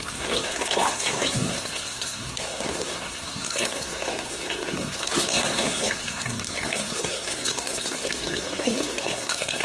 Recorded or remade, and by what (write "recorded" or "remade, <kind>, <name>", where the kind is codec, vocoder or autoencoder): remade, codec, SNAC